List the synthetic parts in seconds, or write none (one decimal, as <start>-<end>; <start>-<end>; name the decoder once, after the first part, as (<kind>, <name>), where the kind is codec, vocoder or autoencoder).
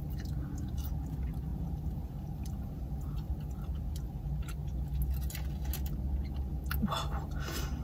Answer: 1.5-3.3 (vocoder, BigVGAN v2)